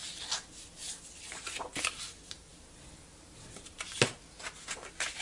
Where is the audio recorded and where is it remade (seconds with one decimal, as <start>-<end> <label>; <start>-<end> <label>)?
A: 0.0-5.2 recorded